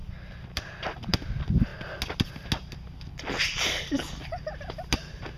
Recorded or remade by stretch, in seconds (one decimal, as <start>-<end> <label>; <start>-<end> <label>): 0.0-0.7 remade; 0.7-4.2 recorded; 4.2-5.4 remade